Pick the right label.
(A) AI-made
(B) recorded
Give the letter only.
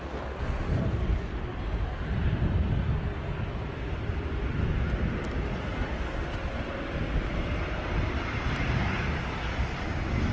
B